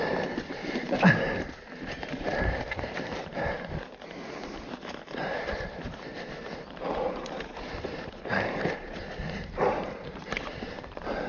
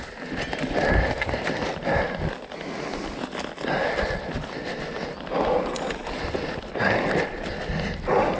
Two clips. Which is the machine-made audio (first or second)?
first